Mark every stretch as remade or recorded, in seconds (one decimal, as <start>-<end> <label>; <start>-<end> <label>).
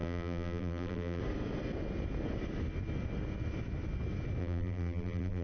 0.0-1.2 remade; 1.2-4.4 recorded; 4.4-5.4 remade